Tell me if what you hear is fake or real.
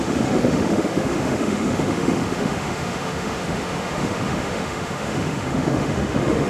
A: fake